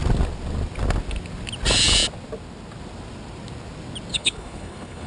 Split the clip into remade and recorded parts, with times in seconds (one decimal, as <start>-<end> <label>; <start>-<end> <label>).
0.0-4.1 recorded; 4.1-5.1 remade